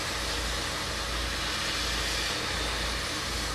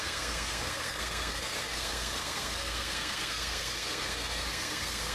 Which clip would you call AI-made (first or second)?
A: second